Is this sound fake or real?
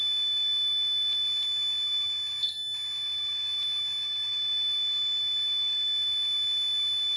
real